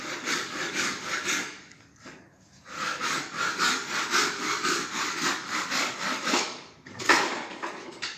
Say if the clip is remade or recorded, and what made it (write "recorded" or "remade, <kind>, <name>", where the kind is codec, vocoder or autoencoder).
remade, codec, DAC